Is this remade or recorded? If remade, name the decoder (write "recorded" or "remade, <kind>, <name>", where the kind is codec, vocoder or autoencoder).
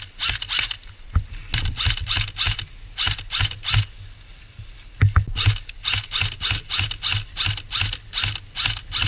recorded